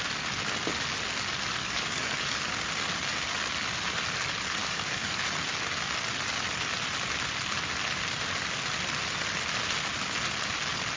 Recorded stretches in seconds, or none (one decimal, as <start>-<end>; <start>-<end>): 0.0-1.6; 2.6-4.6; 5.2-11.0